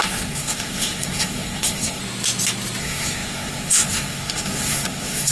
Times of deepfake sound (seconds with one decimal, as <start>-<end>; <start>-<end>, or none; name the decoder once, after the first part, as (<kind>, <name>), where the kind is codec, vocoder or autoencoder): 0.0-2.0 (codec, SNAC); 2.8-5.3